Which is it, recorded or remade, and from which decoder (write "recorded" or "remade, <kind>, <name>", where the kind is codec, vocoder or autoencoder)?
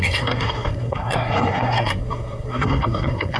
remade, codec, SNAC